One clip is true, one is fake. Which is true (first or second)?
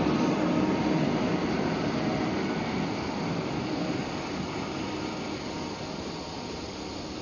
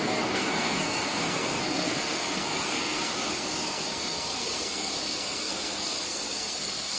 first